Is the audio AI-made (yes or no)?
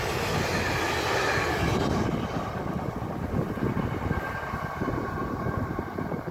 no